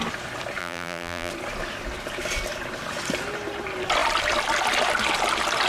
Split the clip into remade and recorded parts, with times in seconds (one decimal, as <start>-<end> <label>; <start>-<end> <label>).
0.0-0.6 recorded; 0.6-1.3 remade; 1.3-5.7 recorded